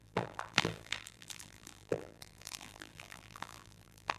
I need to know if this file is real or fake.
fake